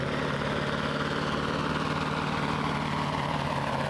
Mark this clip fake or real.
real